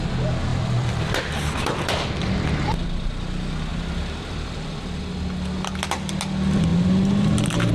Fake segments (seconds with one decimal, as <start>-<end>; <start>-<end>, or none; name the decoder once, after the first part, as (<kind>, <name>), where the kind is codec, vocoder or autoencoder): 0.5-2.1 (vocoder, BigVGAN v2); 3.7-5.0

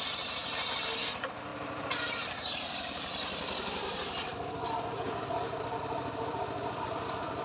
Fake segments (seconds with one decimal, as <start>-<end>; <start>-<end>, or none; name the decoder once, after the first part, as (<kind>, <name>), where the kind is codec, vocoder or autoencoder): 0.0-0.4 (vocoder, BigVGAN v2); 1.0-7.4

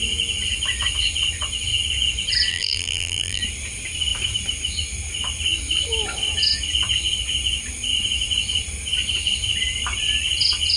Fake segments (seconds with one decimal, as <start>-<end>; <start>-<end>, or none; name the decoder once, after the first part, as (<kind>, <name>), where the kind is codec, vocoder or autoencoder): 2.5-3.4 (vocoder, BigVGAN v2)

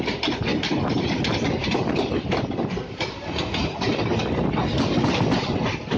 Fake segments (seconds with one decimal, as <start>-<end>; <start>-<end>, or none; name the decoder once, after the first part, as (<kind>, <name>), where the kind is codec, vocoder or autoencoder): 0.5-1.2 (vocoder, BigVGAN v2)

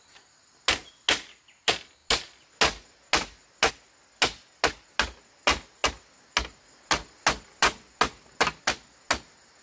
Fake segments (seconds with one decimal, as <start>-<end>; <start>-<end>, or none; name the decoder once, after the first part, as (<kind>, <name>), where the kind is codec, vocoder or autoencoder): none

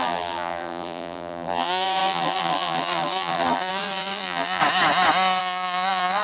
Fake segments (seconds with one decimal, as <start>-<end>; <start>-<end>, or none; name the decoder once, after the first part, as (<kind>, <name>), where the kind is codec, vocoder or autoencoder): 0.0-4.6 (vocoder, BigVGAN v2); 5.4-6.2

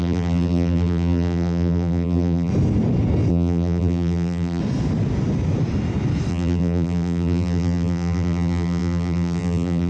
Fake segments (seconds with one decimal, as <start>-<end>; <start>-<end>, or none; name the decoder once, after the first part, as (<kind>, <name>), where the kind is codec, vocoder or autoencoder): 0.0-2.5 (vocoder, BigVGAN v2); 3.3-4.6; 6.3-9.9

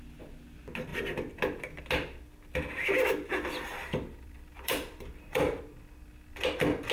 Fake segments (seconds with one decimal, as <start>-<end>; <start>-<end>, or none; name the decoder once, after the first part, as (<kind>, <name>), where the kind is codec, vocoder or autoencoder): 3.7-5.6 (vocoder, BigVGAN v2)